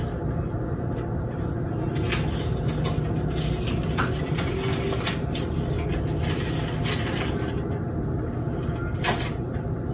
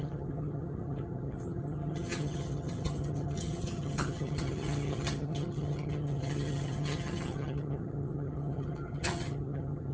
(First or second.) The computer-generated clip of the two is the second